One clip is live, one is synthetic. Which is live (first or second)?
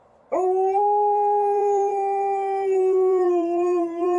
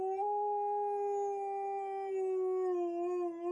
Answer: second